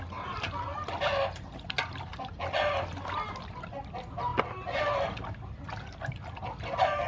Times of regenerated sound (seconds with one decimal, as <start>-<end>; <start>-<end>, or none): none